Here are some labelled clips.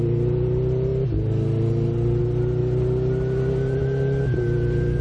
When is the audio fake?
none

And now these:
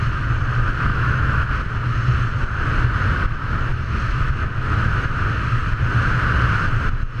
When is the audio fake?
0.9-1.5 (autoencoder, DAC-VAE); 3.7-5.1

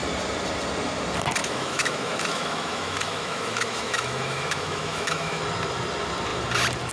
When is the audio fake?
1.4-5.4 (autoencoder, DAC-VAE)

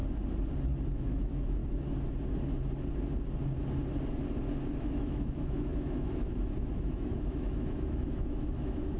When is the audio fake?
0.9-1.6 (autoencoder, DAC-VAE); 4.8-9.0

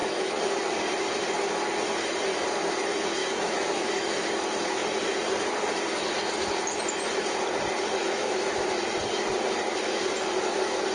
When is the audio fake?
3.2-4.1 (autoencoder, DAC-VAE); 8.0-8.7

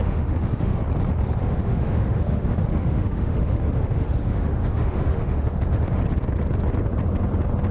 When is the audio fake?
0.0-0.8 (autoencoder, DAC-VAE); 1.4-6.0

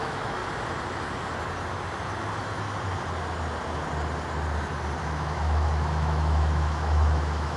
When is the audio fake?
0.0-0.4 (autoencoder, DAC-VAE); 5.0-7.6

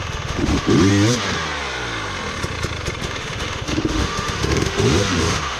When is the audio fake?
0.0-0.9 (autoencoder, DAC-VAE); 3.0-5.6